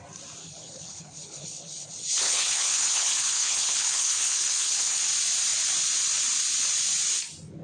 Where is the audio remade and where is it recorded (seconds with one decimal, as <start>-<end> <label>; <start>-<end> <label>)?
0.0-0.4 recorded; 0.4-5.0 remade; 5.0-7.6 recorded